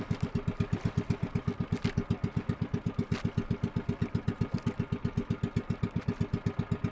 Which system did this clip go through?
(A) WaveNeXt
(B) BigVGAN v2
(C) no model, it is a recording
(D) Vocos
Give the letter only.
C